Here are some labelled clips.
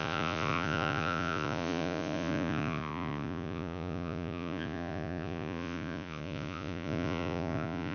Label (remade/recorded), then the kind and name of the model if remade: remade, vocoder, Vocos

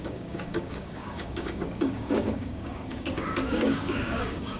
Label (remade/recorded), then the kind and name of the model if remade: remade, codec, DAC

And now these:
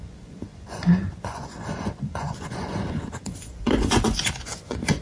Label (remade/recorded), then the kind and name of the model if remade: remade, vocoder, Vocos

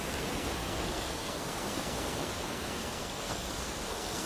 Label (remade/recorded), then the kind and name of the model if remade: remade, codec, SNAC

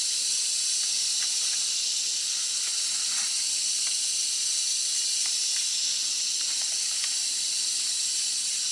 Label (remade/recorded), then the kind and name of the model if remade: recorded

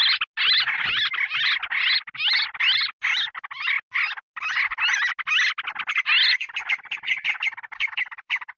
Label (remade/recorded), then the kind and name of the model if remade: recorded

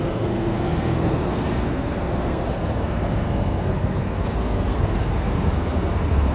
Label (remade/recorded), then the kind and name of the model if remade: remade, codec, SNAC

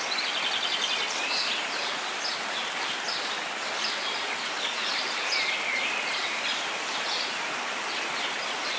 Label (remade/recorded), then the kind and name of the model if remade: remade, vocoder, BigVGAN v2